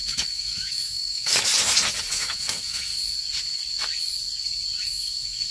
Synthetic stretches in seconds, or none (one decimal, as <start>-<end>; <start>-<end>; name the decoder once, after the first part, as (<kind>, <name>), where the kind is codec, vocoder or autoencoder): 0.0-1.5 (autoencoder, DAC-VAE); 2.1-2.9; 4.8-5.5